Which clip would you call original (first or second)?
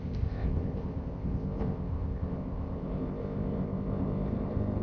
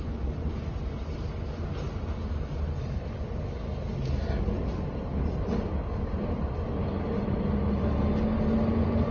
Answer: second